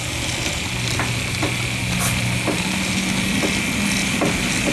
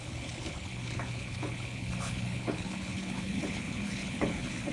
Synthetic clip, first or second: second